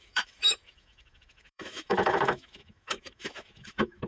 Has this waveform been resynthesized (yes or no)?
yes